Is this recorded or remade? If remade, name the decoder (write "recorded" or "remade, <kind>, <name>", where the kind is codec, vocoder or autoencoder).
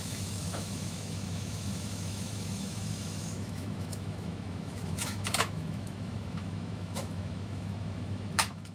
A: remade, autoencoder, DAC-VAE